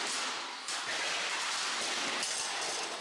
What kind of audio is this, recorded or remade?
recorded